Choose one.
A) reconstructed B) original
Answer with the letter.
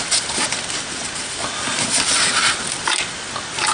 B